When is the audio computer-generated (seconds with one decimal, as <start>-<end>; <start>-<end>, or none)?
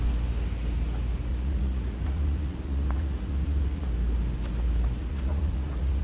1.3-3.9; 5.0-6.0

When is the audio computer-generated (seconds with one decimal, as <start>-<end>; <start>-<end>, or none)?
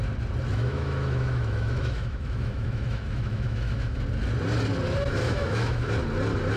0.5-4.0; 5.2-5.9